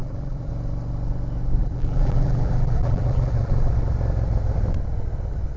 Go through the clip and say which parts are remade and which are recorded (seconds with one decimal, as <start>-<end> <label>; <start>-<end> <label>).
0.0-0.5 remade; 0.5-1.6 recorded; 1.6-3.7 remade; 3.7-5.6 recorded

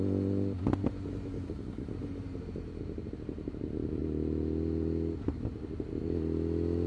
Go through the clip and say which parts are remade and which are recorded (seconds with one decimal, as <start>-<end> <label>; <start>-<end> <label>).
0.0-6.9 recorded

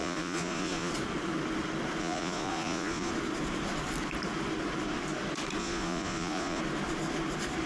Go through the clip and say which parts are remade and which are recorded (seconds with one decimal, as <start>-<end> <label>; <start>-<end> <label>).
0.0-0.9 remade; 0.9-2.0 recorded; 2.0-3.1 remade; 3.1-5.6 recorded; 5.6-6.6 remade; 6.6-7.7 recorded

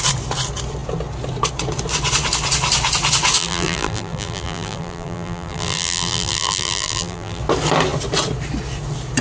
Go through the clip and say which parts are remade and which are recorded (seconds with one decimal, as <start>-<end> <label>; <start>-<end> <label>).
0.0-3.4 recorded; 3.4-7.4 remade; 7.4-9.2 recorded